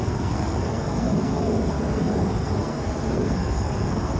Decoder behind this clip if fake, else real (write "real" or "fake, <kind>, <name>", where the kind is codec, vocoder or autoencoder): fake, codec, SNAC